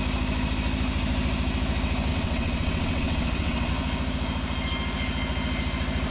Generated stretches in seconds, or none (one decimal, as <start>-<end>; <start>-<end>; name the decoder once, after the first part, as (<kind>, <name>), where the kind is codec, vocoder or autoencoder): 2.1-3.7 (vocoder, WaveNeXt)